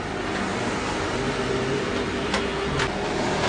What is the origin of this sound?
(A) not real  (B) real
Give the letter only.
B